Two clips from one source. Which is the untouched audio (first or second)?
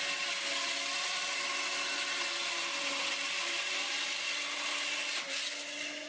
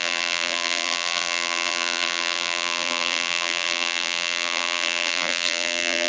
first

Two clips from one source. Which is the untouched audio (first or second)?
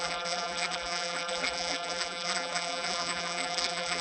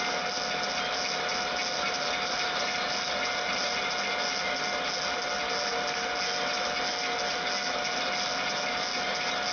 second